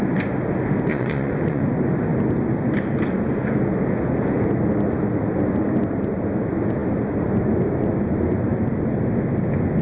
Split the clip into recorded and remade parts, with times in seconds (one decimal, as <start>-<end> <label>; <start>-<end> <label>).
0.0-0.9 recorded; 0.9-1.6 remade; 1.6-9.8 recorded